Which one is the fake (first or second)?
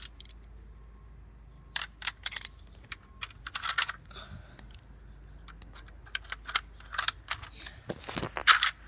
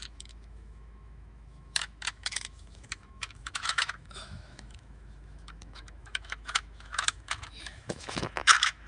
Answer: second